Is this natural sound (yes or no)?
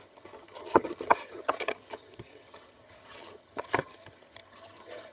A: no